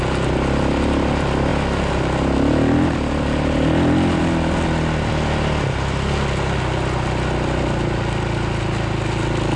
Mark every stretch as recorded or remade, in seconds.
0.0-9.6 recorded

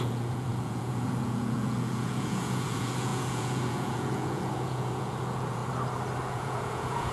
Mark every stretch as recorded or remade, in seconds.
0.0-5.6 remade; 5.6-6.3 recorded; 6.3-7.1 remade

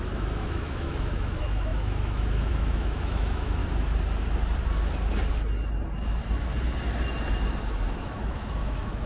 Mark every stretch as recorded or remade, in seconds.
0.0-3.6 remade; 3.6-7.9 recorded; 7.9-9.1 remade